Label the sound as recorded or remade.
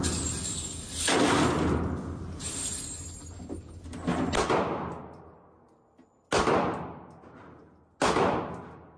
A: recorded